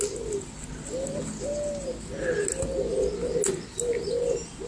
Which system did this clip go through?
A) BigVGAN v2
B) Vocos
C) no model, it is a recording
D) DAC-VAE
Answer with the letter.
C